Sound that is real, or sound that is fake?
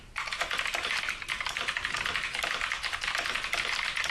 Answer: real